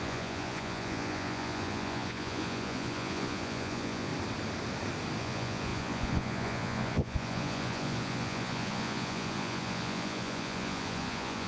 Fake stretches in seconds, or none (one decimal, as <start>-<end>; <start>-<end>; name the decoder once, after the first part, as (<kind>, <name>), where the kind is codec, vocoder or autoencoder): 0.0-4.1 (vocoder, Vocos); 5.2-11.5